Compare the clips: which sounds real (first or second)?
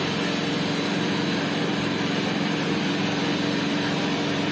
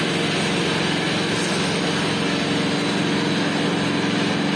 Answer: second